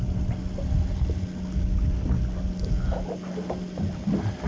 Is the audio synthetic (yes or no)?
no